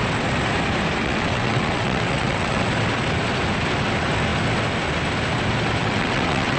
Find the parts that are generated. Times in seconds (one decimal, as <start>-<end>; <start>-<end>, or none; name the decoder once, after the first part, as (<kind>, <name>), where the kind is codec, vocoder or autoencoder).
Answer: 1.0-2.7 (vocoder, WaveNeXt); 5.8-6.6